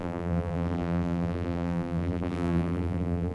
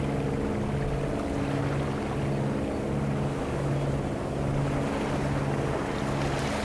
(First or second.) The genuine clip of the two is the second